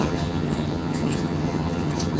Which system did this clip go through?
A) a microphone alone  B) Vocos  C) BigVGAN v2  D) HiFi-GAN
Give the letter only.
D